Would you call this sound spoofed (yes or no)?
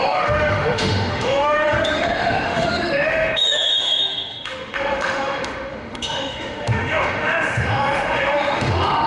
yes